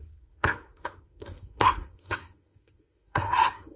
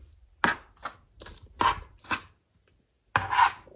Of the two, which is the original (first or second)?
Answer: second